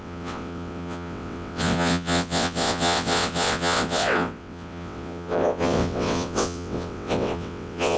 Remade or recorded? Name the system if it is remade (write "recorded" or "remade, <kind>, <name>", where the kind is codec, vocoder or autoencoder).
remade, vocoder, WaveNeXt